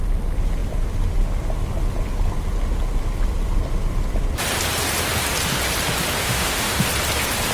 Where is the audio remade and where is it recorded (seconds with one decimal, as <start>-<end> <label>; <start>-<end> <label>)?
0.0-6.2 recorded; 6.2-6.9 remade; 6.9-7.5 recorded